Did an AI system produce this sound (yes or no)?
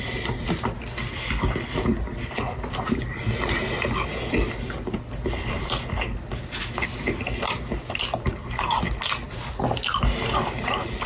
no